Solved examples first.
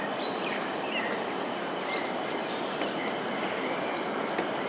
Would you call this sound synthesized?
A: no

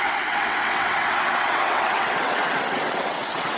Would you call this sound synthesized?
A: yes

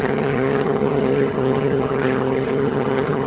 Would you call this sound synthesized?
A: yes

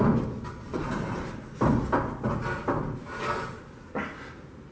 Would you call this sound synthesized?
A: no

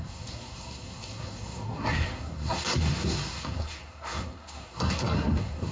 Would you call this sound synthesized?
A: yes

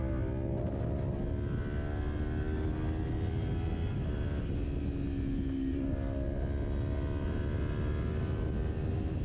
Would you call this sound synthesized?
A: no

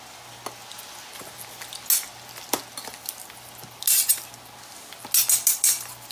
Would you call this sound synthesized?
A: no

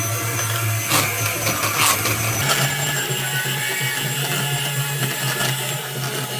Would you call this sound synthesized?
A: no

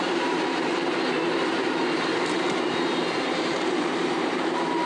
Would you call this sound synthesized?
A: yes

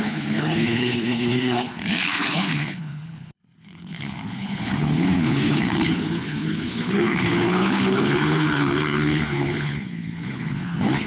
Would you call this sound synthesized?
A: yes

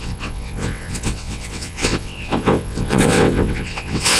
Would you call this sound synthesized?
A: yes